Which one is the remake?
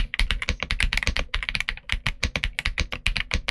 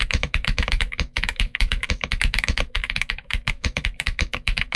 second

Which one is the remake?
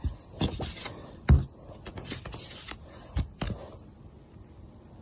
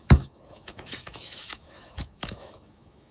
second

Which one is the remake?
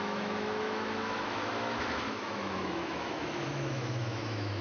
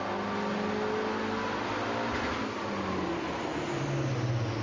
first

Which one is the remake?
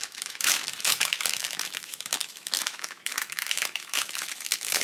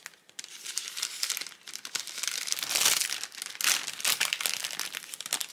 first